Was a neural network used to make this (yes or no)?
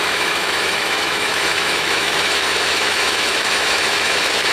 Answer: yes